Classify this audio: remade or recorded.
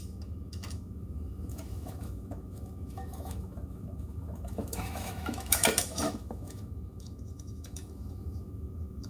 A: remade